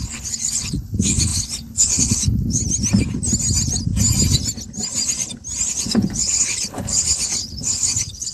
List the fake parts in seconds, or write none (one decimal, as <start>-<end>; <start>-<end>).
0.0-2.6; 5.7-8.3